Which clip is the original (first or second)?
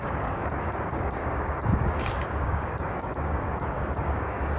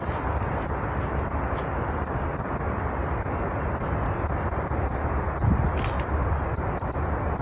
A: second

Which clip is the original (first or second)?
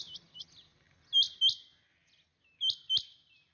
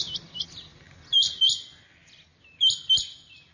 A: first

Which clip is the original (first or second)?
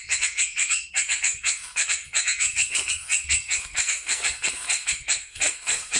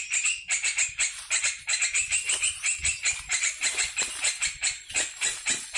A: second